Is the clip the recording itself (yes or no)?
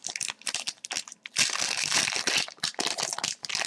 yes